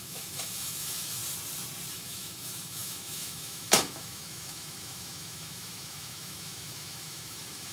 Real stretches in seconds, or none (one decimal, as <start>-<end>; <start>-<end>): 1.2-1.9